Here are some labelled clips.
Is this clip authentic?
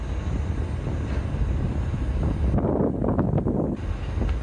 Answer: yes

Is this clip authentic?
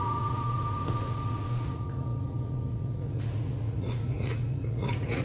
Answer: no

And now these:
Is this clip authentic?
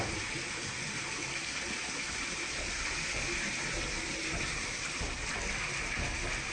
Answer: yes